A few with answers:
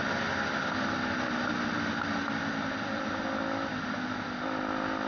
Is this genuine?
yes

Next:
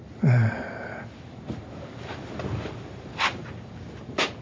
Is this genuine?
yes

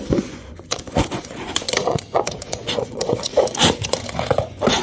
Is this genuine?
no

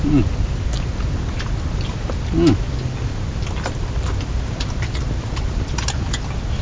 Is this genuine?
yes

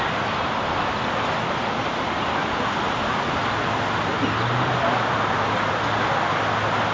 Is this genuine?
yes